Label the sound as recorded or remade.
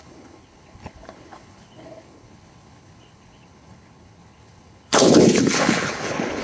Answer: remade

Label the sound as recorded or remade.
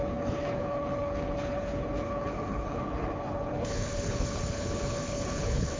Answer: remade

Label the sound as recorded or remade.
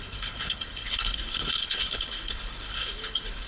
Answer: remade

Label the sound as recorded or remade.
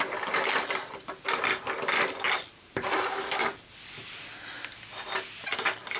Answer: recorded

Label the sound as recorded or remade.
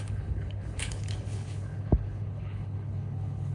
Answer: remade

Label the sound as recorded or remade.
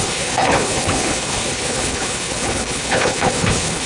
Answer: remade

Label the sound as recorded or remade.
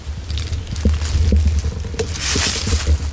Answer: recorded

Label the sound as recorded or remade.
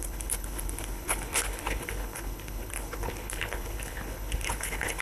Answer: remade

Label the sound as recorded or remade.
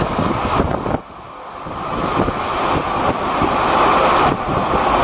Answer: recorded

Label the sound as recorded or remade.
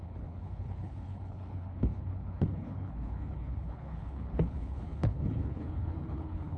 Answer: remade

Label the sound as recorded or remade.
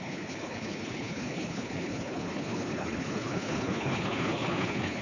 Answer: remade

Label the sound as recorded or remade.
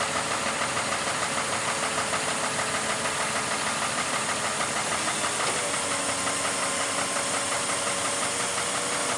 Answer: recorded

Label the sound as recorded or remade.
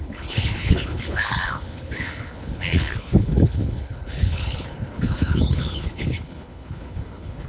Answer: remade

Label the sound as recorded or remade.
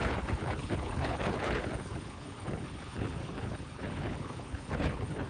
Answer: remade